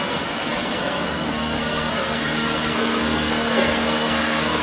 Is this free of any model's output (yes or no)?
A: no